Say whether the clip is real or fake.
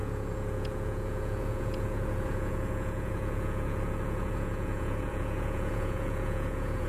fake